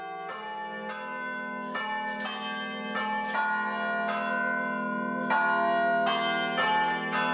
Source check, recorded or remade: recorded